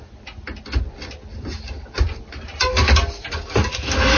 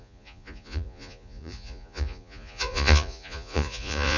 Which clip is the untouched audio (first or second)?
first